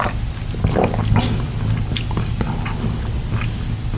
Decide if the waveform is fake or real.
real